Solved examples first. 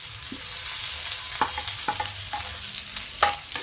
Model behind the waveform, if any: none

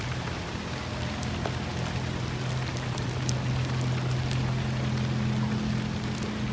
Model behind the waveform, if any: none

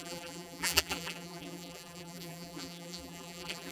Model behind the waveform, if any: vocoder, BigVGAN v2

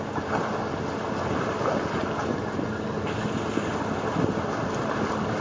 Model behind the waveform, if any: none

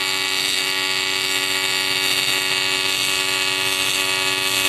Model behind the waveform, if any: autoencoder, DAC-VAE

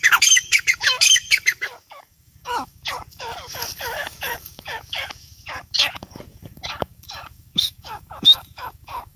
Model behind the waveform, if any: codec, DAC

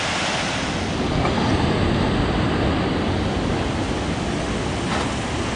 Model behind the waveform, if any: none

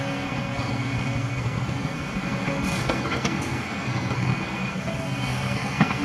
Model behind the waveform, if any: codec, SNAC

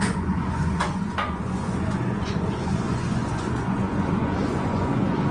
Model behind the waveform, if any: vocoder, Vocos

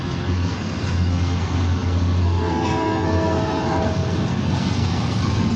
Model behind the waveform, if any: codec, SNAC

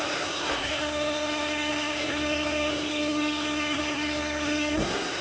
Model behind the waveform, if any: codec, SNAC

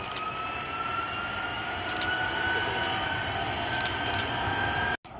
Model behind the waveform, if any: none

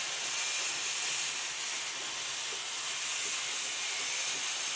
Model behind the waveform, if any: none